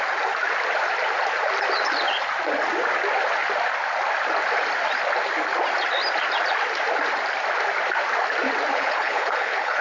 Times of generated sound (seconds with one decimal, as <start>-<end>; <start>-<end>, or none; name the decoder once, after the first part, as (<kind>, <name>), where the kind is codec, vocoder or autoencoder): 8.7-9.8 (codec, HILCodec)